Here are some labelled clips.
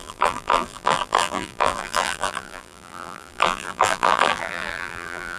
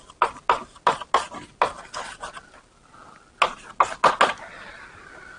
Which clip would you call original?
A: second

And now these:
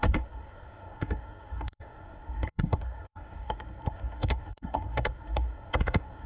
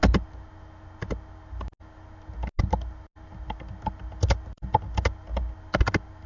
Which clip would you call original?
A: second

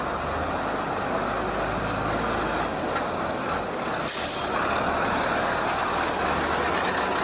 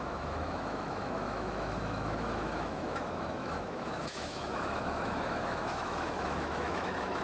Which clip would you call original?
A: first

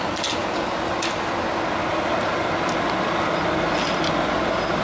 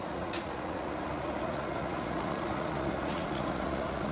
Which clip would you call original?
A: first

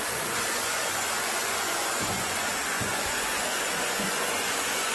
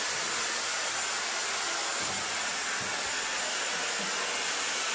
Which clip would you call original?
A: second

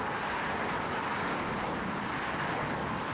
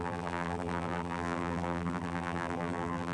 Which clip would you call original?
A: first